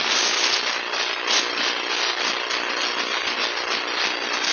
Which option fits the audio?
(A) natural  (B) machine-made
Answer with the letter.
A